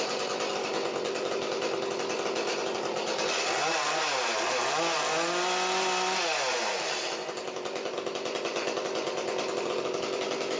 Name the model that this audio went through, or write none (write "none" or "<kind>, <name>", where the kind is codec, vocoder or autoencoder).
none